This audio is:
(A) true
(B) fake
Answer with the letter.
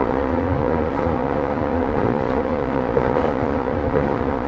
B